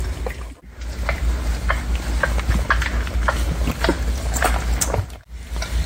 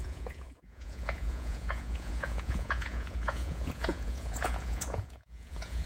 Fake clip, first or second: second